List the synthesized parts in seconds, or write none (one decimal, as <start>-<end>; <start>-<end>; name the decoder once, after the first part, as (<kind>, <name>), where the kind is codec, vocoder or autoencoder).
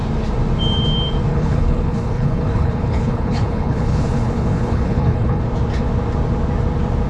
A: 1.3-5.4 (codec, HILCodec)